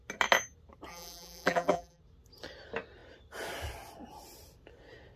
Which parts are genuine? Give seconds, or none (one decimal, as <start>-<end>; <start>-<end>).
0.0-0.9; 2.0-5.2